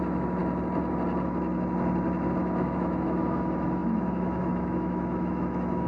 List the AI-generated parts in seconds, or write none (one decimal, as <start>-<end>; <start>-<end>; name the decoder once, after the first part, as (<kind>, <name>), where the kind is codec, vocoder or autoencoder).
0.0-0.4 (autoencoder, DAC-VAE); 2.4-5.9